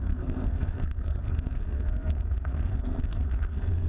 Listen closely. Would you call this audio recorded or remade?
remade